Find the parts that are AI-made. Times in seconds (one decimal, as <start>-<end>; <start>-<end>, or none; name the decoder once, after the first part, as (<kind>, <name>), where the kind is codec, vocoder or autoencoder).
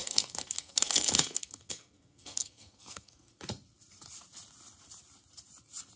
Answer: 0.0-3.3 (codec, SNAC)